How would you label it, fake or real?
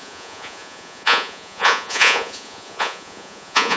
fake